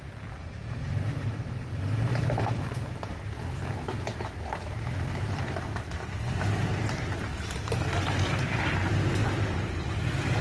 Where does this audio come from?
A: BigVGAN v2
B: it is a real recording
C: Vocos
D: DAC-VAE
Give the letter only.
B